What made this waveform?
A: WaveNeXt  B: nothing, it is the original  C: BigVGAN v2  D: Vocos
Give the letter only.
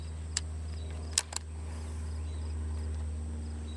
B